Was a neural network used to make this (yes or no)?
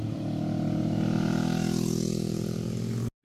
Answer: no